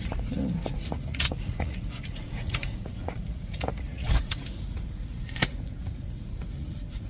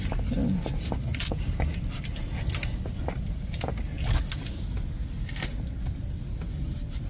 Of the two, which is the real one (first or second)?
second